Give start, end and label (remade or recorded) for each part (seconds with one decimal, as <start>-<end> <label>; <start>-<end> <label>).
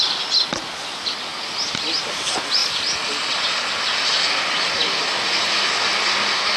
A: 0.0-6.6 recorded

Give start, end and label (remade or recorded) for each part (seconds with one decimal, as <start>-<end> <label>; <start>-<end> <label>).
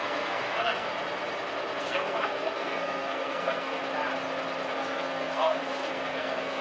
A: 0.0-0.9 remade; 0.9-1.8 recorded; 1.8-3.8 remade; 3.8-4.7 recorded; 4.7-6.6 remade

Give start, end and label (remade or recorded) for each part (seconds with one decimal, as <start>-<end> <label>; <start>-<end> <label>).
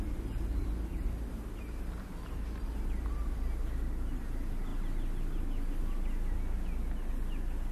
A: 0.0-7.7 recorded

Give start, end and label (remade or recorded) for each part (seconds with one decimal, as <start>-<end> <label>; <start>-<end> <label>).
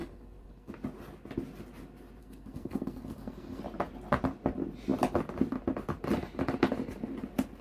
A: 0.0-0.7 remade; 0.7-2.2 recorded; 2.2-3.6 remade; 3.6-7.6 recorded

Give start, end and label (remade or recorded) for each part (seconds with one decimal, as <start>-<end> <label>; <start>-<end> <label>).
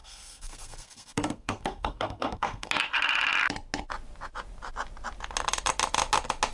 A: 0.0-2.7 remade; 2.7-6.5 recorded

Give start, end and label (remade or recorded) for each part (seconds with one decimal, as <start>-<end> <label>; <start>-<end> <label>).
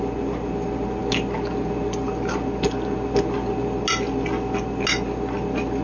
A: 0.0-5.8 recorded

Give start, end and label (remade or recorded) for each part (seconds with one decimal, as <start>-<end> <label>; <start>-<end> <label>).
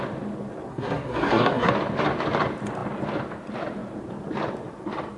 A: 0.0-0.7 recorded; 0.7-1.7 remade; 1.7-5.2 recorded